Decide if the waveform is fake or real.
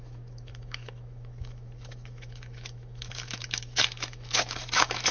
fake